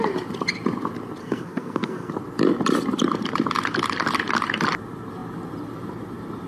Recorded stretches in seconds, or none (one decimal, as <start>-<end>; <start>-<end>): 0.0-1.2; 2.1-6.5